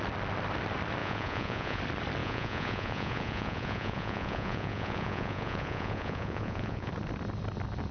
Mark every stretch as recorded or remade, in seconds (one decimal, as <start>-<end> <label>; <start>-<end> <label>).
0.0-1.0 recorded; 1.0-1.8 remade; 1.8-2.2 recorded; 2.2-6.9 remade; 6.9-7.9 recorded